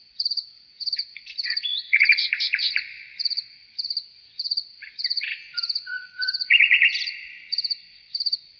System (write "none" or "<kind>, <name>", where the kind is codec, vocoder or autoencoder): vocoder, Vocos